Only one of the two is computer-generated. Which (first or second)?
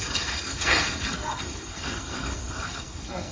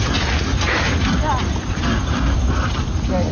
first